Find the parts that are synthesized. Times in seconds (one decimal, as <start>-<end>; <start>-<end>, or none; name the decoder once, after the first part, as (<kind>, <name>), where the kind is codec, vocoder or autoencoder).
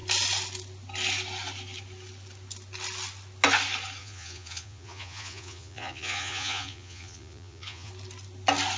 4.0-7.9 (vocoder, Vocos)